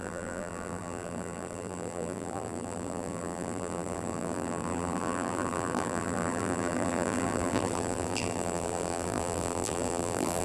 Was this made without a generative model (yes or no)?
no